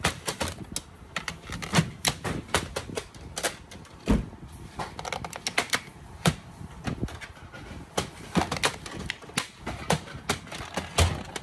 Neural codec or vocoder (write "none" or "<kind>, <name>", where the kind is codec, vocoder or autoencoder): none